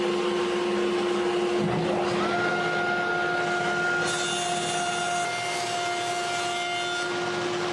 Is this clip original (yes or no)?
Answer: yes